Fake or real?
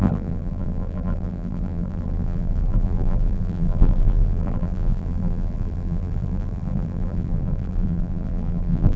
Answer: fake